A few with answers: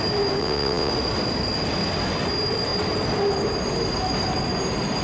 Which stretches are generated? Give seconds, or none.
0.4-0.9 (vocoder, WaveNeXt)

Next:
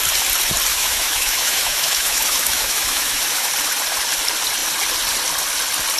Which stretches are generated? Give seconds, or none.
0.7-3.5 (autoencoder, DAC-VAE)

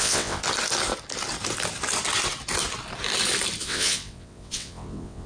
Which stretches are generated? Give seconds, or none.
0.0-0.4 (vocoder, WaveNeXt); 3.6-5.3

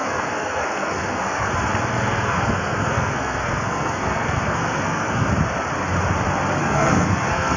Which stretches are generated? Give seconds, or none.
0.0-1.5 (codec, SNAC); 1.9-5.3; 6.6-7.6

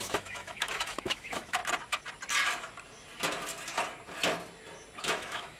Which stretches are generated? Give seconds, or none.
0.0-1.6 (autoencoder, DAC-VAE); 5.0-5.6

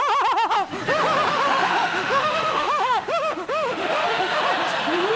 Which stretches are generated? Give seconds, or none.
1.3-4.4 (autoencoder, DAC-VAE)

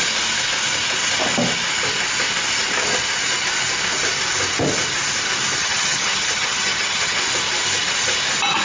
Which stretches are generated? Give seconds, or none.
5.6-7.2 (vocoder, HiFi-GAN)

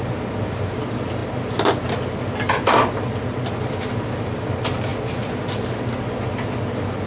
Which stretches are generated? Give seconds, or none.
none